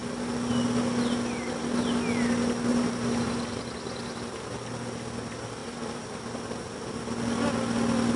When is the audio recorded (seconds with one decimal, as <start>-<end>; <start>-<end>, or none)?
0.0-2.7; 3.6-5.6; 6.2-8.2